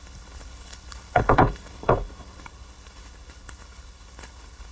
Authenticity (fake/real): fake